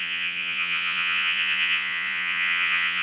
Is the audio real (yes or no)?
no